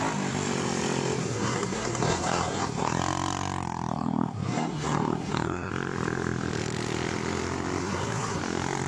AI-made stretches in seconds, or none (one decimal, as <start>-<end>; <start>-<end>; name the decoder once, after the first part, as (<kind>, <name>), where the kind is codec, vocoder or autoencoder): 1.2-3.0 (codec, SNAC); 3.9-5.7; 7.8-8.4